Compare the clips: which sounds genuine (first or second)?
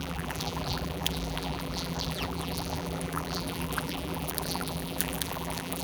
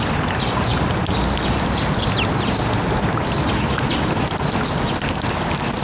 second